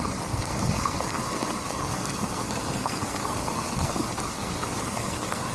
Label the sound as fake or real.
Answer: fake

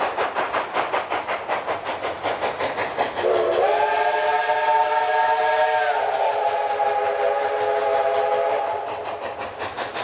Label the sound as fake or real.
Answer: real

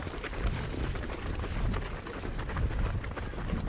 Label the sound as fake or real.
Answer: real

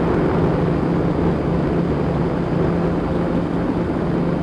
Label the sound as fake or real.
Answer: real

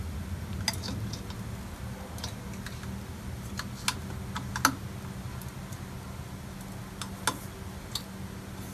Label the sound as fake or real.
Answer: real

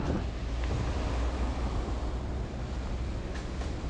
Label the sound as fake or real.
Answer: real